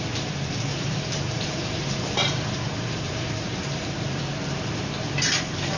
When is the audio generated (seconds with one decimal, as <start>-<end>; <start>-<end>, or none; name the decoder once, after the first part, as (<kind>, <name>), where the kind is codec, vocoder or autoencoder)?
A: 0.7-4.2 (vocoder, BigVGAN v2)